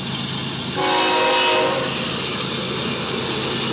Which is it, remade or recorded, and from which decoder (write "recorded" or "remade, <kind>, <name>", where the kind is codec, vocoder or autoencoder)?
recorded